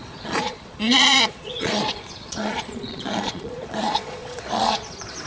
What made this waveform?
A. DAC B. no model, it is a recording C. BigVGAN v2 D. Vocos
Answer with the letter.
D